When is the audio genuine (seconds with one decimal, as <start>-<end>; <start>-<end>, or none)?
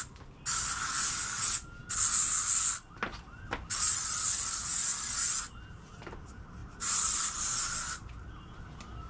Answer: 0.0-9.1